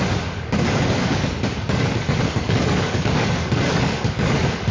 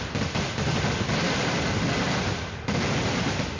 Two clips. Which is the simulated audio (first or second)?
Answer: first